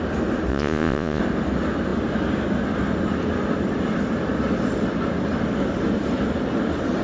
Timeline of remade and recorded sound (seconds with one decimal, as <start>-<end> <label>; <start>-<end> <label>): 0.0-0.5 recorded; 0.5-1.2 remade; 1.2-7.0 recorded